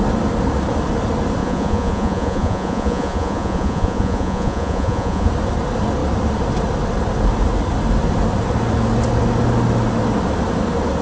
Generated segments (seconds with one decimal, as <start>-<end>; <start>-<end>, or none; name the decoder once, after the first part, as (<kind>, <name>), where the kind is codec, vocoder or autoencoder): 1.4-5.3 (vocoder, Vocos)